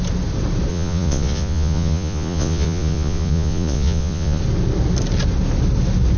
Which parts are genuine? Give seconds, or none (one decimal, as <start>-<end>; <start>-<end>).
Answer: 0.0-0.7; 4.4-6.2